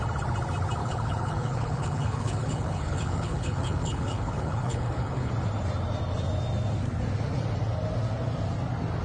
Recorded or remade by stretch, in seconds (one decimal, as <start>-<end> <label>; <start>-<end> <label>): 0.0-0.8 recorded; 0.8-5.3 remade; 5.3-9.0 recorded